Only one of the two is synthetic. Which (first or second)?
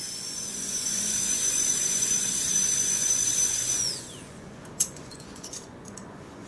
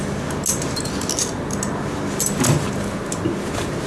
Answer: first